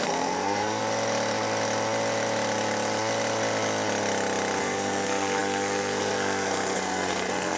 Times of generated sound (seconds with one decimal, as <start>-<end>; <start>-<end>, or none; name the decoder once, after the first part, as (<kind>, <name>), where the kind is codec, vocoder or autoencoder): 0.0-0.8 (codec, SNAC); 4.6-7.6